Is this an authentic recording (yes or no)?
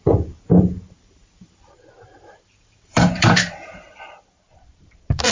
no